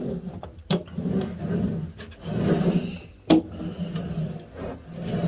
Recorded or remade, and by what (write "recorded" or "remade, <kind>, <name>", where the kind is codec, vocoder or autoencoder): recorded